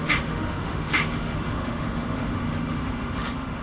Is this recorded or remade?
remade